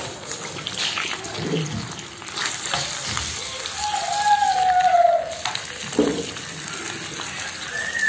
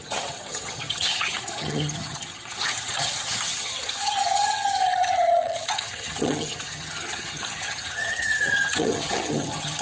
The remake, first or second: second